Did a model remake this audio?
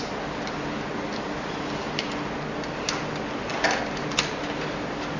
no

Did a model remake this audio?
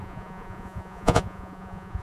yes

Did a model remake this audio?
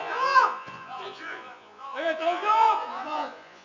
yes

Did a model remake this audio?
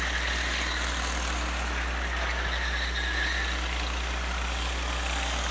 no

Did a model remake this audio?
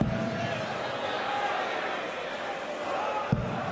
no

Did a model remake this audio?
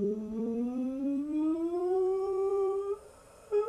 yes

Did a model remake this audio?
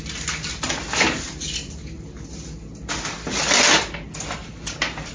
no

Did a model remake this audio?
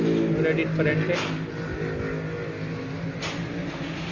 no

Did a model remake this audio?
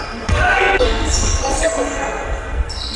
yes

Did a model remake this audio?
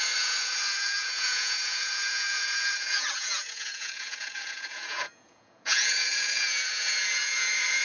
yes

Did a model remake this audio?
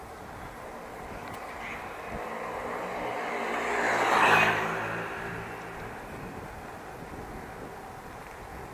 no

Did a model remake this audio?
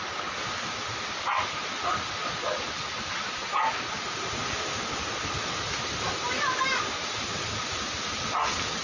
no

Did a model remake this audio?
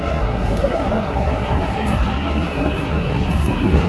yes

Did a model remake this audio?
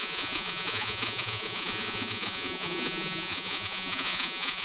yes